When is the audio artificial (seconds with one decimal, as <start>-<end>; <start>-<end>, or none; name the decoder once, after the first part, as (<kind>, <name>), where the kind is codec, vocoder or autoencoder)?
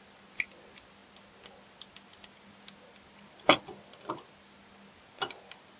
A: none